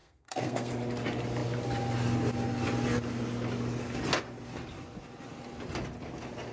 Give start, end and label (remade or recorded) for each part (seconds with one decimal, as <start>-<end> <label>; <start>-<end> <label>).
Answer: 0.0-0.7 remade; 0.7-6.5 recorded